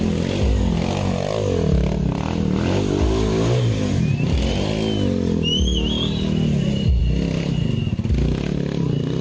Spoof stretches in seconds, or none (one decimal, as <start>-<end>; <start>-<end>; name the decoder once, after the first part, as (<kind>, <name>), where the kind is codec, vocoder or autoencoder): none